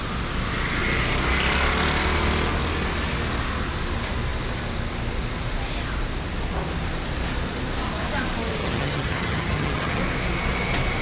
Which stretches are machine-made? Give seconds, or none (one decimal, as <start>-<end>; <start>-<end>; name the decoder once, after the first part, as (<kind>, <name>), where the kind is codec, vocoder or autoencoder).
8.6-10.0 (vocoder, HiFi-GAN)